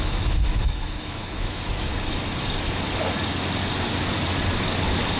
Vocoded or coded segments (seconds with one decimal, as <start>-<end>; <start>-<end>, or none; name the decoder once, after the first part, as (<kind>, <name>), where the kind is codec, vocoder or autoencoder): 0.0-1.9 (autoencoder, DAC-VAE)